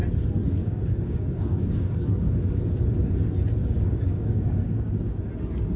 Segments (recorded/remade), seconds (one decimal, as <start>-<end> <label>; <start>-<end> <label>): 0.0-0.6 recorded; 0.6-2.3 remade; 2.3-3.6 recorded; 3.6-5.2 remade; 5.2-5.8 recorded